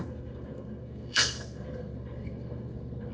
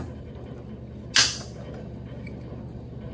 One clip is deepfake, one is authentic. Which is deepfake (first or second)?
first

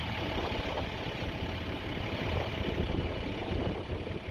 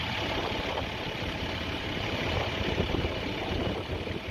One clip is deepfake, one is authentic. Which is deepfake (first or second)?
second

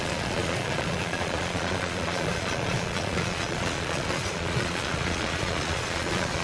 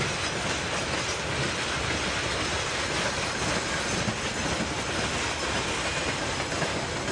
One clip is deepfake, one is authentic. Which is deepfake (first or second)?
first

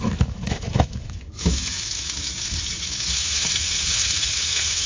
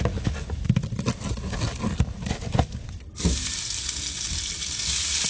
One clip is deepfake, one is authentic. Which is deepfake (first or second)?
first